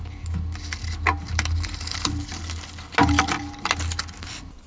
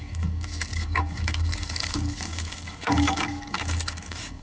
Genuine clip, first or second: first